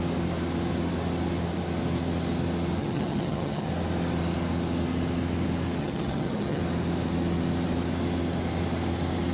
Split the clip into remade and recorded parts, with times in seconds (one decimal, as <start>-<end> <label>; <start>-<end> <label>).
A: 0.0-2.8 recorded; 2.8-3.7 remade; 3.7-5.8 recorded; 5.8-6.6 remade; 6.6-9.3 recorded